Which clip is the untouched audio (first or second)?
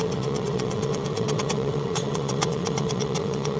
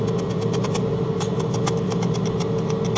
second